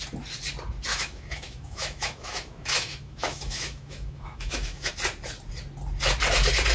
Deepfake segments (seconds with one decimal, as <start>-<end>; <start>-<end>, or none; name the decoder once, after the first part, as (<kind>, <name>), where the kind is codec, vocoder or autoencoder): 0.9-4.9 (autoencoder, DAC-VAE)